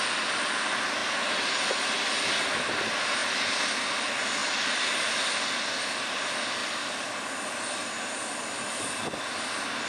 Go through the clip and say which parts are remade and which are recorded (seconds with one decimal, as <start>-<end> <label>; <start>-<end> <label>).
0.0-9.9 recorded